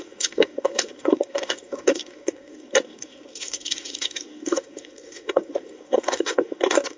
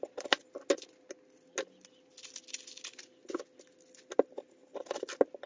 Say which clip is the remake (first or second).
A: first